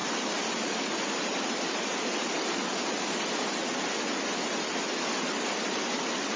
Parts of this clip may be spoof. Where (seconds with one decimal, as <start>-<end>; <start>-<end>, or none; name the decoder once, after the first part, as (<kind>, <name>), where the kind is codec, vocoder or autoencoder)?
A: 0.0-1.8 (vocoder, BigVGAN v2)